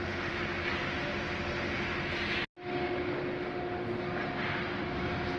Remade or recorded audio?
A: recorded